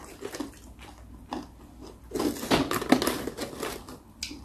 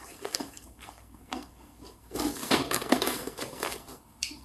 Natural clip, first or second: first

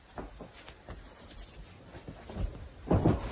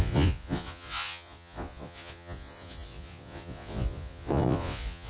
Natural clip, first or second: first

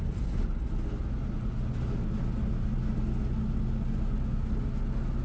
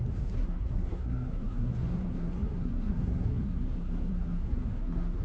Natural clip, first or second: first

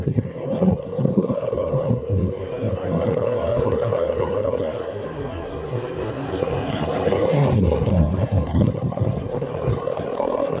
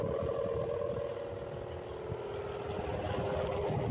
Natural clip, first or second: second